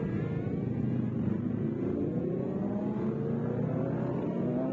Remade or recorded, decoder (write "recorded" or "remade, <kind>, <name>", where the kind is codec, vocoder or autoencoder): recorded